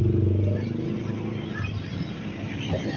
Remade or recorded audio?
recorded